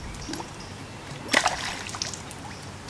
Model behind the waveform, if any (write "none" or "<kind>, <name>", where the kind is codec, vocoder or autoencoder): none